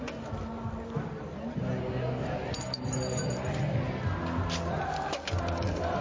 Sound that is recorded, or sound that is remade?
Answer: recorded